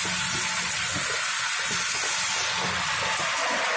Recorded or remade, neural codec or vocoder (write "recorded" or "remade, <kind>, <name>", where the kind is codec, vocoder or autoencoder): recorded